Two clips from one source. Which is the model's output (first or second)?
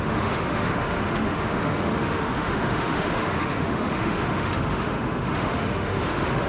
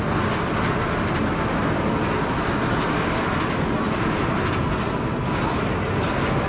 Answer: first